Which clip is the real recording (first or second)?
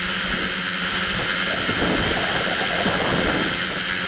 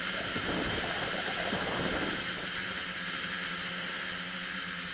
first